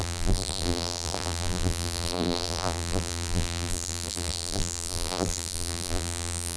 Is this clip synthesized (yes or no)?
yes